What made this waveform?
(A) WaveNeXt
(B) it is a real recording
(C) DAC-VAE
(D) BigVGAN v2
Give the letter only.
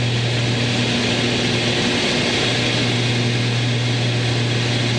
B